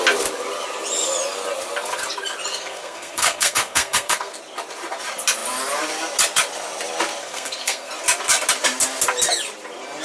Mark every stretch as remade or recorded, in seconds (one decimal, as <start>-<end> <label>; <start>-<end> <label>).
0.0-2.5 recorded; 2.5-4.4 remade; 4.4-7.2 recorded; 7.2-7.9 remade; 7.9-10.0 recorded